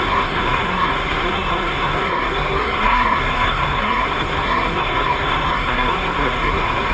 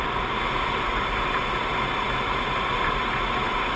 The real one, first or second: second